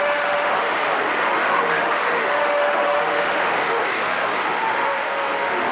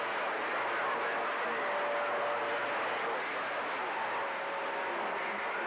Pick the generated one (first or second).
first